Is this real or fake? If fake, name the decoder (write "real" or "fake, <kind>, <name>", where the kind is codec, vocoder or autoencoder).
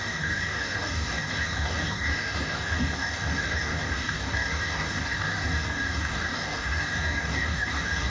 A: fake, codec, DAC